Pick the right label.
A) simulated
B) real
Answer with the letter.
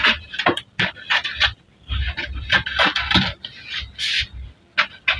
B